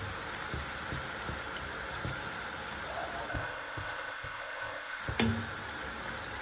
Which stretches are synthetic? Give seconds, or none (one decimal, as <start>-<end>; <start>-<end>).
3.3-5.0